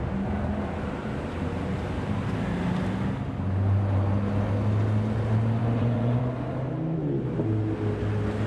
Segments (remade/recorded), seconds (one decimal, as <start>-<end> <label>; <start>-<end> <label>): 0.0-5.6 recorded; 5.6-6.2 remade; 6.2-8.5 recorded